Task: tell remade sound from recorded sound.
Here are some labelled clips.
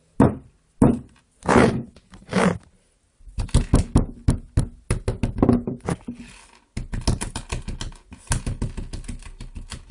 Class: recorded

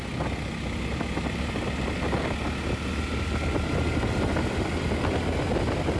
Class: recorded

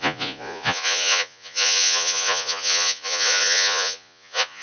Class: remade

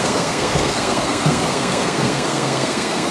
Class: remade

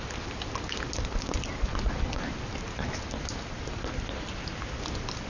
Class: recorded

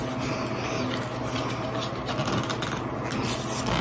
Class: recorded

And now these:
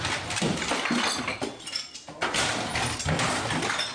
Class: recorded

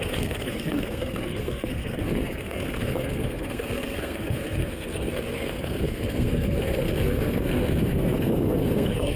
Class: remade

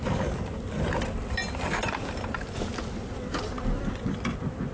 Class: recorded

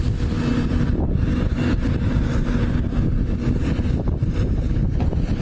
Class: recorded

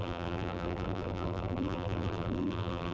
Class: remade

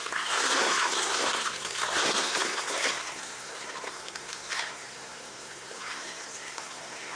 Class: remade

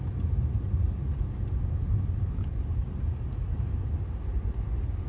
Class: recorded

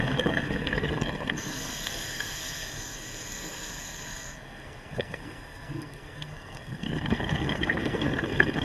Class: remade